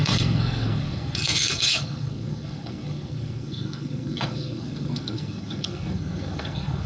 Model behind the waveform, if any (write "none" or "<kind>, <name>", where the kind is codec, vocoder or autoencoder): codec, SNAC